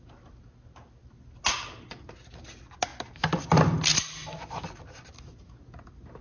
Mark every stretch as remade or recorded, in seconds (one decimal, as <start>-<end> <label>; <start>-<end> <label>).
0.0-6.2 recorded